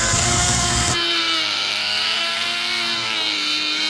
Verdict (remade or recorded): remade